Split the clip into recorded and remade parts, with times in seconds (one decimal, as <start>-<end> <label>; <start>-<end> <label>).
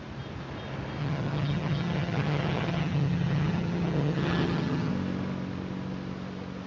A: 0.0-1.0 recorded; 1.0-4.9 remade; 4.9-6.7 recorded